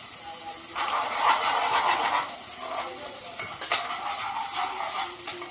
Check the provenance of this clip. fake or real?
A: real